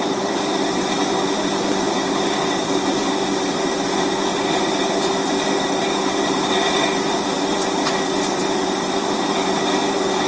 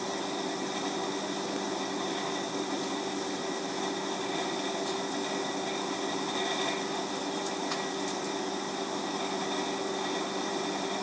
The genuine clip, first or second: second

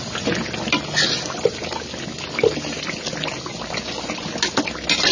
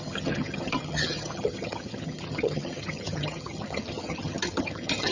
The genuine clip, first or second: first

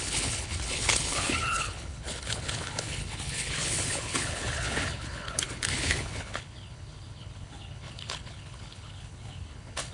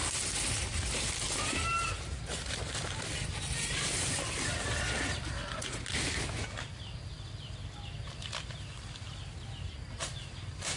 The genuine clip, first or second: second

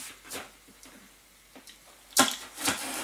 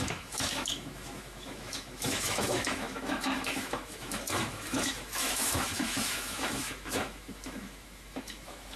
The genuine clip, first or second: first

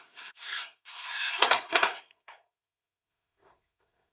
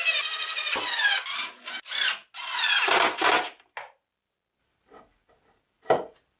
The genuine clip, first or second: second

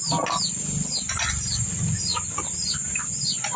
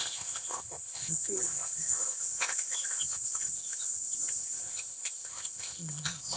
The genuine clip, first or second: first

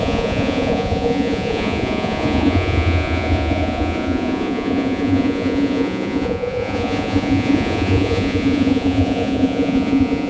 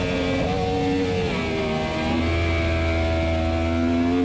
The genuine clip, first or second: second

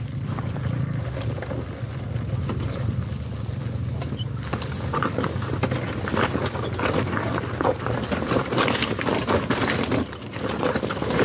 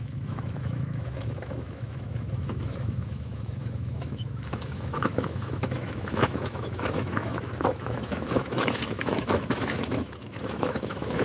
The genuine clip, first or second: first